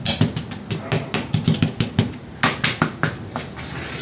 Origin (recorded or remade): recorded